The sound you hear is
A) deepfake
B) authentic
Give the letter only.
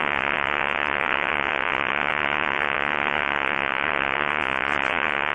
A